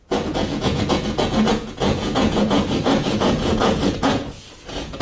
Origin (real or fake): fake